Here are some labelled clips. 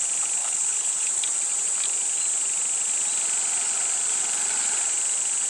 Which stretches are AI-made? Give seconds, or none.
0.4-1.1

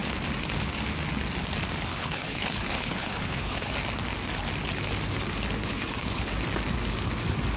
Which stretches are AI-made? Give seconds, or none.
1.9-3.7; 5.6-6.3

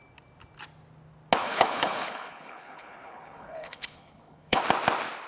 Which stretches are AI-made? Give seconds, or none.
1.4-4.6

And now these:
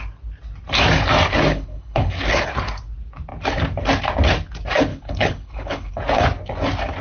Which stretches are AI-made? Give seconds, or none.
1.5-2.5; 4.9-5.9

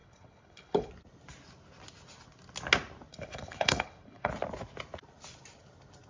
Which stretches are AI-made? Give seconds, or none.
0.0-0.9; 3.1-4.3

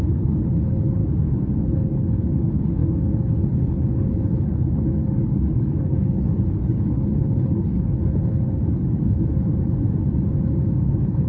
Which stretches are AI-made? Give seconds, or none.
0.0-1.0; 1.6-9.5; 10.8-11.3

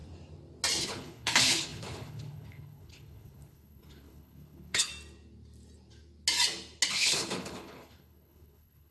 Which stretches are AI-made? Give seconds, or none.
0.8-4.9; 6.9-8.9

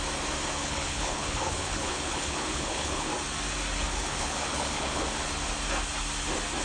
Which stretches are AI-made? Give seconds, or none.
0.6-3.1; 4.0-5.0